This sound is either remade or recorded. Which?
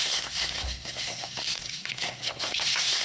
remade